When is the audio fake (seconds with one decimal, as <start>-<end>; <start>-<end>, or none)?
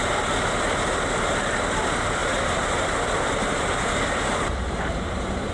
2.2-5.5